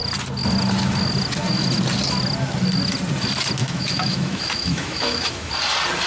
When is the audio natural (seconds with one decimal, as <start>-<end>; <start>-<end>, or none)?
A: 0.0-3.6; 5.5-6.1

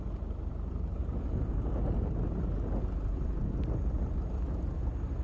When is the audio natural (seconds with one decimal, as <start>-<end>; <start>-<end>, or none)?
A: 1.0-4.1

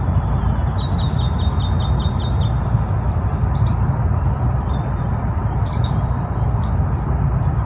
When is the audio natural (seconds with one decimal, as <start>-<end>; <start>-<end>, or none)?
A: 0.6-1.9

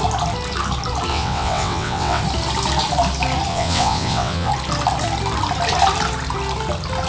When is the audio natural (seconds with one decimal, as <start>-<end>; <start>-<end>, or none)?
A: 0.0-1.1; 2.2-3.5; 4.5-7.1

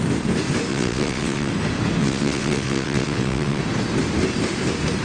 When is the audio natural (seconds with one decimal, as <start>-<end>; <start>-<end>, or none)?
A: 0.0-0.7; 1.5-2.0; 3.6-5.0

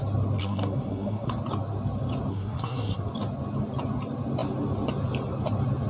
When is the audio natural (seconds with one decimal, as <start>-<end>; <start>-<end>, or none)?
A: 0.0-0.4; 1.3-2.3; 3.0-5.9

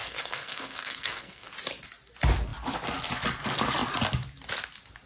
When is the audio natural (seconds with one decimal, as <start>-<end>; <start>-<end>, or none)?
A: 1.5-5.1